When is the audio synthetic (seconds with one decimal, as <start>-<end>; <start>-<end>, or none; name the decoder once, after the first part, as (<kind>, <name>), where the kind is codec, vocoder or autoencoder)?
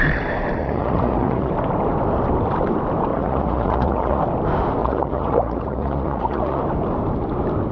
0.6-1.5 (vocoder, Vocos); 3.1-4.2; 4.8-6.6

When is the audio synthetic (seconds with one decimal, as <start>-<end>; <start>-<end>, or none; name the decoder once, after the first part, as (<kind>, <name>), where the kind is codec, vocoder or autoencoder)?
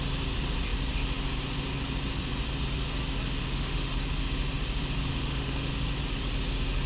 3.4-3.9 (autoencoder, DAC-VAE); 5.1-5.7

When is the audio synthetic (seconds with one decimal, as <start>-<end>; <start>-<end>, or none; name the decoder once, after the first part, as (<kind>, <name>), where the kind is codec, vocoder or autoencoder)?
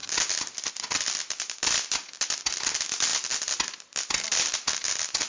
none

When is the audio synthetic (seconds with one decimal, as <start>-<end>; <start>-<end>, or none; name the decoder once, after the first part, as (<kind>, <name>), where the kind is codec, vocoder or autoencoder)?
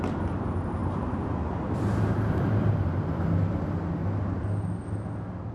0.8-3.6 (vocoder, BigVGAN v2)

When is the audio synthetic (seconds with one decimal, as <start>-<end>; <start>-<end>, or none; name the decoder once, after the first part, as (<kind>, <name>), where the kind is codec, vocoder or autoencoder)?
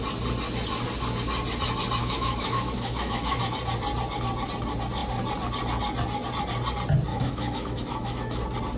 2.0-3.4 (autoencoder, DAC-VAE); 7.1-8.4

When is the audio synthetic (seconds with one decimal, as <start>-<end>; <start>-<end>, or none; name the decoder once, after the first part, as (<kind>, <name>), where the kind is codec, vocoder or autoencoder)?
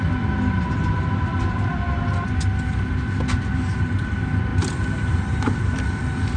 0.0-1.8 (vocoder, BigVGAN v2); 2.9-6.4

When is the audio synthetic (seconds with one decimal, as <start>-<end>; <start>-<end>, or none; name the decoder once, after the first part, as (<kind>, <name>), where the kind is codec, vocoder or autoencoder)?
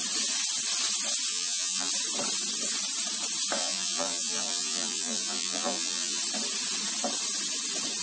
1.3-1.9 (vocoder, BigVGAN v2); 3.6-6.2